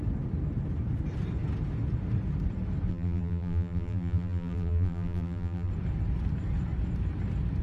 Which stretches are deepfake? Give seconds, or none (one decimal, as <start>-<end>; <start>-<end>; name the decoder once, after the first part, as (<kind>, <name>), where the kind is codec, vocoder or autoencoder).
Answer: 2.9-5.7 (vocoder, BigVGAN v2)

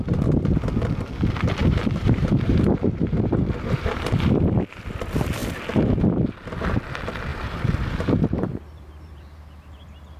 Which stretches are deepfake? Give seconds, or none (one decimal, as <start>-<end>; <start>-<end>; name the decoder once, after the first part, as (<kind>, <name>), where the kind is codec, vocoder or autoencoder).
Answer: 1.6-4.4 (vocoder, BigVGAN v2); 7.3-10.2

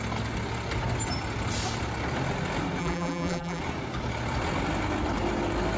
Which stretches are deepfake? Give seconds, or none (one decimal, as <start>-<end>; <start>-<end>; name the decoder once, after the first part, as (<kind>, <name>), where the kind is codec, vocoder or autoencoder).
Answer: 2.8-3.6 (vocoder, BigVGAN v2)

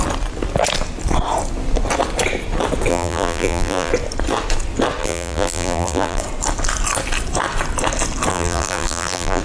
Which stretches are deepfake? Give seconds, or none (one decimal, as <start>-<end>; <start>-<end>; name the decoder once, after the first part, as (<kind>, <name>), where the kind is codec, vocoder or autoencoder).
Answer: 2.9-3.9 (vocoder, BigVGAN v2); 5.0-6.2; 8.3-9.4

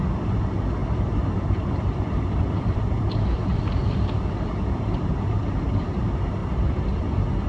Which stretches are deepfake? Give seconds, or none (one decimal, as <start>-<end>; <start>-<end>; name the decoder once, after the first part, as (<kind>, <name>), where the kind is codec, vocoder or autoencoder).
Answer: 0.8-3.6 (vocoder, BigVGAN v2); 6.4-7.5

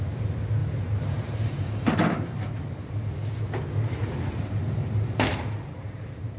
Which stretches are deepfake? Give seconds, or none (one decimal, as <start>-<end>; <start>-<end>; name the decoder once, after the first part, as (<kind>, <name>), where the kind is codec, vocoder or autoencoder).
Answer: 0.6-2.3 (vocoder, BigVGAN v2); 4.0-6.4